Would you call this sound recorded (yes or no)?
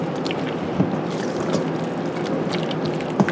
no